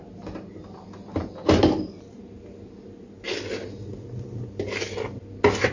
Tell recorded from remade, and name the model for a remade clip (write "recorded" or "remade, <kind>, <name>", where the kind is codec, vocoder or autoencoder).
recorded